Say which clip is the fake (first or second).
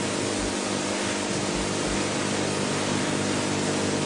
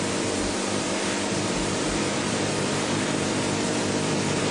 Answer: second